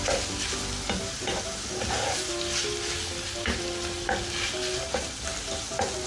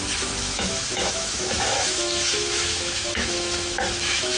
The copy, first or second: second